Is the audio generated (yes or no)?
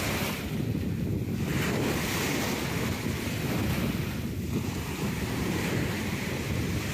no